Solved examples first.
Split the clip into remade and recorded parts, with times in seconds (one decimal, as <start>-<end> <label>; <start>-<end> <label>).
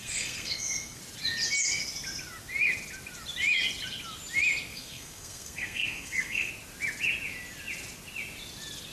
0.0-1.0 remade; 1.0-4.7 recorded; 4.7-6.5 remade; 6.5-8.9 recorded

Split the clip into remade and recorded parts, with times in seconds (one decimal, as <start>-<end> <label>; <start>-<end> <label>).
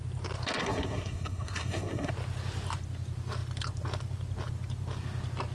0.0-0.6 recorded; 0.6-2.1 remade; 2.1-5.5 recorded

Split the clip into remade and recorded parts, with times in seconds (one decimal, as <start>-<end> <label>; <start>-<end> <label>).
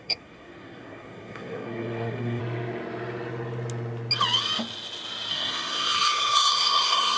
0.0-2.4 remade; 2.4-5.3 recorded; 5.3-7.2 remade